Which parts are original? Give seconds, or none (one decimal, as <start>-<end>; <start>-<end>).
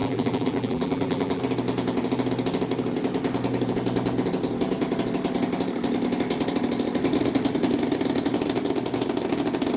1.4-9.8